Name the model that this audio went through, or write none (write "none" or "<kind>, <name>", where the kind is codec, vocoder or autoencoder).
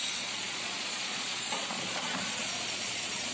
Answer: vocoder, Vocos